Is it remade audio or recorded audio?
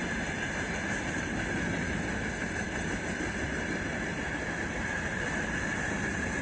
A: recorded